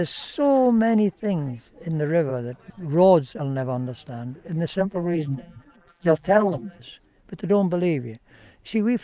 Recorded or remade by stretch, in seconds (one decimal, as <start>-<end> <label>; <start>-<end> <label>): 0.0-4.8 recorded; 4.8-6.8 remade; 6.8-9.0 recorded

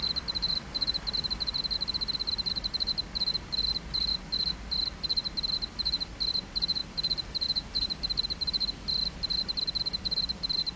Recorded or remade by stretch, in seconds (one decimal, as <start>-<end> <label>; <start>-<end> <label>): 0.0-10.8 recorded